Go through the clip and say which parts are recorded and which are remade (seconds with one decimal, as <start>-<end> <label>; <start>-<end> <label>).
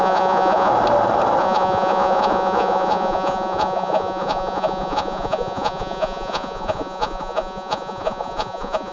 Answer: 0.0-0.7 remade; 0.7-1.4 recorded; 1.4-8.9 remade